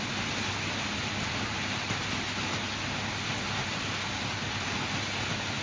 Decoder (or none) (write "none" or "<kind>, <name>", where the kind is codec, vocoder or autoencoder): none